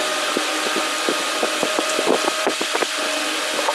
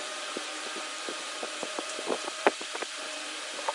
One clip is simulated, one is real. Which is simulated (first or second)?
second